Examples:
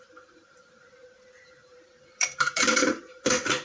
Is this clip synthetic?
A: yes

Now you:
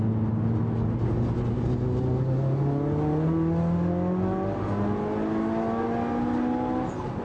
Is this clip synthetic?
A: no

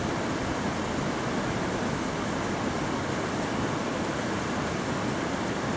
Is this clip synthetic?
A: no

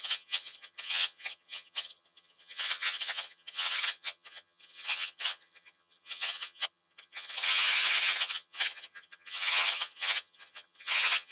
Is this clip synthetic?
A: yes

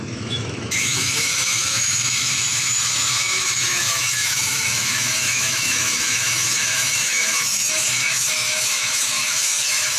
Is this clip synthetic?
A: yes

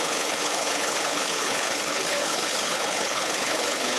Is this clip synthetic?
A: yes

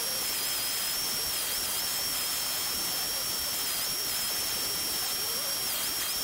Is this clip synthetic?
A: no